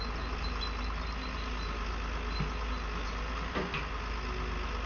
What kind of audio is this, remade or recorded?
recorded